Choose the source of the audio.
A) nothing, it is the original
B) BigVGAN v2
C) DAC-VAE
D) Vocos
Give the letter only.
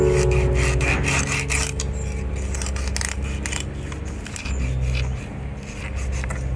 A